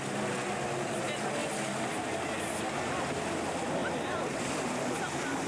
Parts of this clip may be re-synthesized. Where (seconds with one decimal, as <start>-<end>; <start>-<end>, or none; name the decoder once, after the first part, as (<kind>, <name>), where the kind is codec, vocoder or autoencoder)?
none

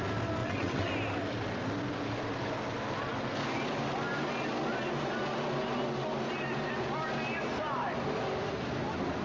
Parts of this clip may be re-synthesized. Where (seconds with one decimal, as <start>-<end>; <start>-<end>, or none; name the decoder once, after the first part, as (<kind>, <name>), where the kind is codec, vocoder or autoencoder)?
0.4-0.9 (vocoder, WaveNeXt)